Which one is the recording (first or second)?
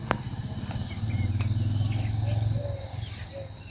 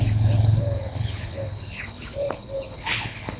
first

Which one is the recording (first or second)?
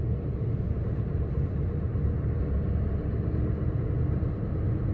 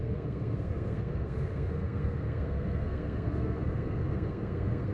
first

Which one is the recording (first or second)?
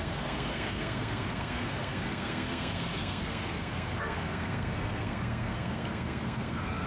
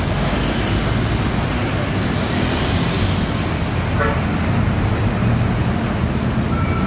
second